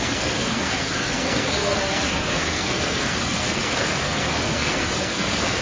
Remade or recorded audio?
remade